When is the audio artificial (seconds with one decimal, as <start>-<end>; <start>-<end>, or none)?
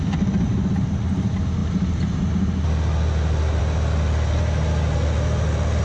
none